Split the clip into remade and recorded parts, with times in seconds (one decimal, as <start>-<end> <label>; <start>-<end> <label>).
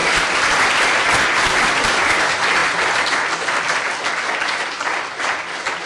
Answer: 0.0-5.9 recorded